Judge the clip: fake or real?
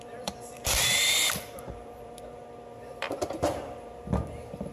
fake